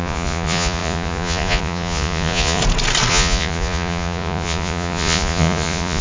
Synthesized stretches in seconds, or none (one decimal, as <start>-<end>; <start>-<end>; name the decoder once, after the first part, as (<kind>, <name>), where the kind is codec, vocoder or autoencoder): 0.0-2.6 (vocoder, Vocos); 3.1-6.0